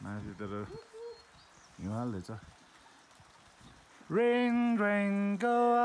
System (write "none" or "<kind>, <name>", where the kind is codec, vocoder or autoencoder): none